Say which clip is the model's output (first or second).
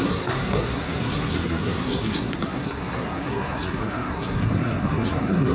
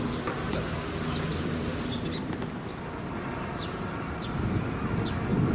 first